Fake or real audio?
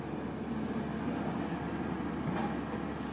real